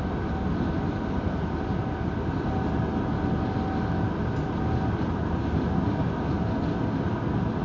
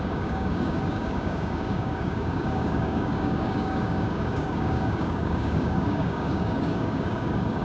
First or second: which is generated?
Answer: second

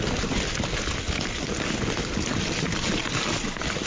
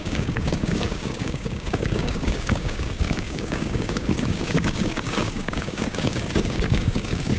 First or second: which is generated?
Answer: second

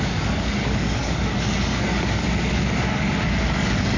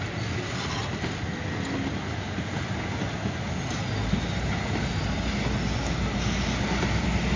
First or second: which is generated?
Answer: first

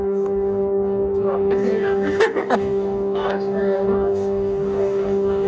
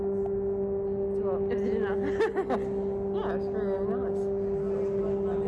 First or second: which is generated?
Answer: first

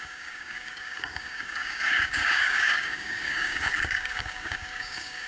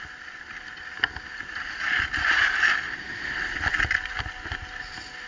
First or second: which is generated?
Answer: first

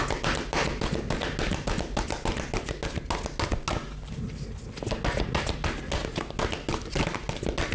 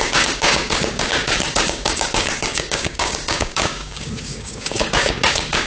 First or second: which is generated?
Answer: second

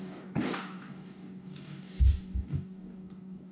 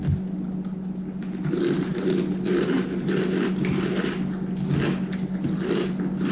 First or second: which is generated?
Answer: first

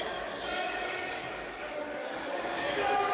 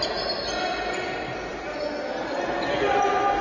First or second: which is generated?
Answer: first